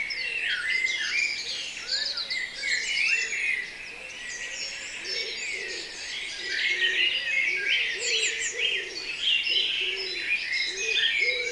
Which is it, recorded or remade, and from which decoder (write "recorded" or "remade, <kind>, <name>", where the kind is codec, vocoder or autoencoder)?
recorded